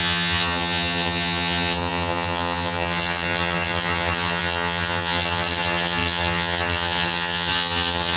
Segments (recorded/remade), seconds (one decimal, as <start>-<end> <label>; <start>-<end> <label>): 0.0-8.2 remade